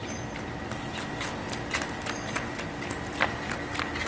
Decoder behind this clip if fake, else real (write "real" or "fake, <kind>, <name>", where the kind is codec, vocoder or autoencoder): real